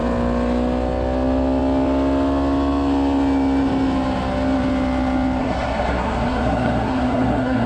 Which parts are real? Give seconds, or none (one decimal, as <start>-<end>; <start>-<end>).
0.0-5.4